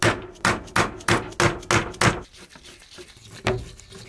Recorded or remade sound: recorded